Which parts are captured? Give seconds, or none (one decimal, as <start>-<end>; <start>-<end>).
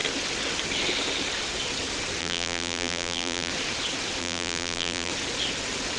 0.0-2.2; 3.5-4.2; 5.1-6.0